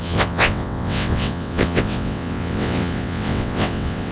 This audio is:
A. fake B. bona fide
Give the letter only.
A